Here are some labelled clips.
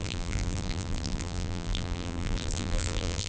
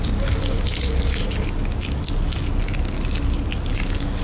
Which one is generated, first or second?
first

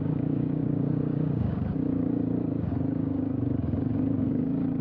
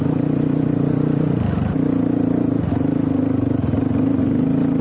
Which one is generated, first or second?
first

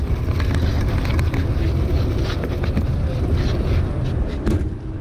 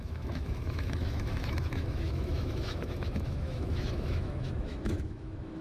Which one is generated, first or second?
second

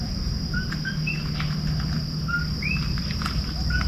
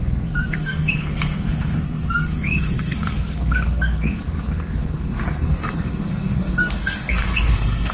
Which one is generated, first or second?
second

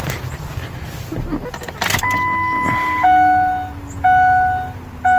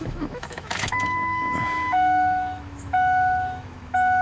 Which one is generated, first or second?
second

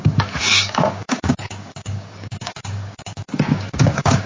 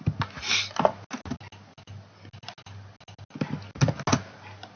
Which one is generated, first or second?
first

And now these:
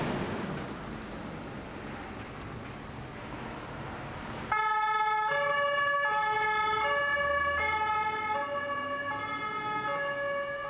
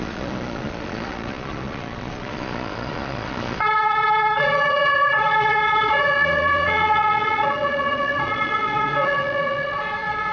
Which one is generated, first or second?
second